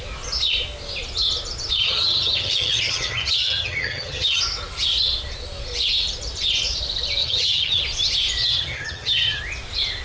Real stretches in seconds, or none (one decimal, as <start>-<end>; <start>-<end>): 0.0-1.8; 4.4-7.2; 7.8-8.4; 9.4-10.0